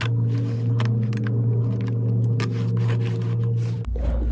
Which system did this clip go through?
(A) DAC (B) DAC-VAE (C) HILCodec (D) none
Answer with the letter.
D